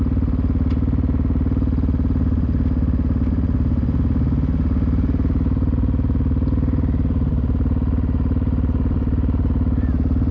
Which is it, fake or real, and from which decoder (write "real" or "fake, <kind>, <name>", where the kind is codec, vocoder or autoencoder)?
real